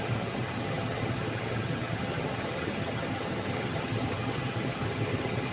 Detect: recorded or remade remade